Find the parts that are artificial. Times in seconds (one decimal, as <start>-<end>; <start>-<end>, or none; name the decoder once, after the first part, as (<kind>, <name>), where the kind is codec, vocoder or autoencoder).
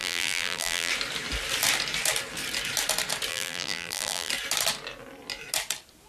0.0-0.9 (vocoder, BigVGAN v2); 3.3-4.3